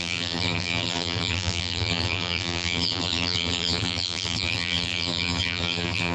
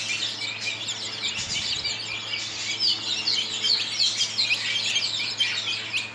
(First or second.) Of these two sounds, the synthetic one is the first